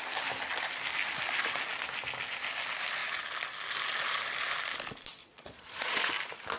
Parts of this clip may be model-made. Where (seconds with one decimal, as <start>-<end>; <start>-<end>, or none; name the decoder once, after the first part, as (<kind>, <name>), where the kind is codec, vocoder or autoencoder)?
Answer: 5.2-6.1 (vocoder, Vocos)